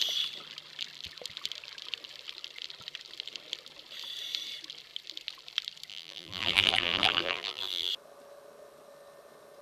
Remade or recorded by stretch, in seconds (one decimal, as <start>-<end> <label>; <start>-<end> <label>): 0.0-5.9 recorded; 5.9-7.9 remade; 7.9-9.6 recorded